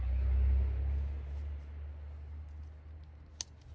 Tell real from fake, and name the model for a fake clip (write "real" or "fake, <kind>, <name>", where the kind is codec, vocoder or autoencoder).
real